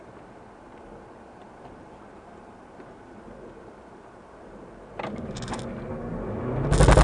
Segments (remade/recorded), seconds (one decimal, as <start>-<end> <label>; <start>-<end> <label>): 0.0-1.4 recorded; 1.4-5.6 remade; 5.6-7.0 recorded